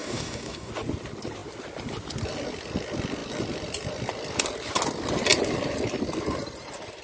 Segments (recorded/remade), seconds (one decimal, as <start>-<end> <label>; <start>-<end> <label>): 0.0-0.7 remade; 0.7-7.0 recorded

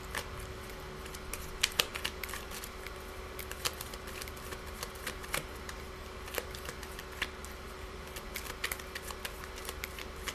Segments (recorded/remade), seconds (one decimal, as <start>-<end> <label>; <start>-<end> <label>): 0.0-10.3 recorded